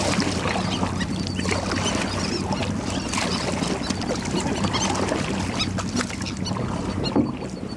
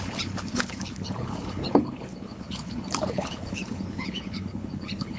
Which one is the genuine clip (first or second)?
first